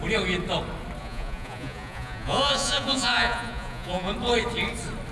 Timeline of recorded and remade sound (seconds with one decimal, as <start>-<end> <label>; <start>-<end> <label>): 0.0-1.0 recorded; 1.0-4.1 remade; 4.1-5.1 recorded